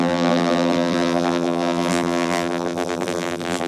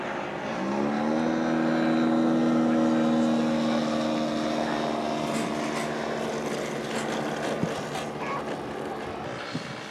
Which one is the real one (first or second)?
second